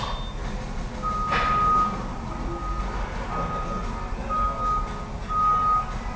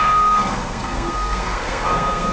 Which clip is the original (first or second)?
first